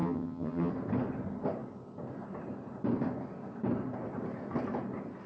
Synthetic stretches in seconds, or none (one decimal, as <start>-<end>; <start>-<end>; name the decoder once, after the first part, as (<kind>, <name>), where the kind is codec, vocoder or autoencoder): 0.0-0.7 (vocoder, HiFi-GAN)